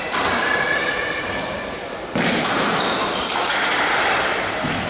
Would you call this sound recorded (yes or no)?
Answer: no